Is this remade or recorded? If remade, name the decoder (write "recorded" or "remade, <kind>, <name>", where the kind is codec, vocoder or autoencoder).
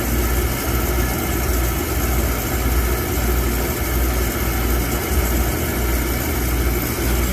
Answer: recorded